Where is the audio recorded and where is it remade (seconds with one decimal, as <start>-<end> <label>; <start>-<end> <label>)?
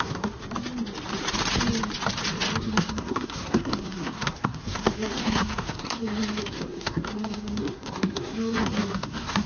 0.0-0.4 remade; 0.4-2.6 recorded; 2.6-9.5 remade